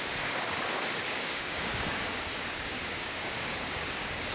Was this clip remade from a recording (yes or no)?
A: yes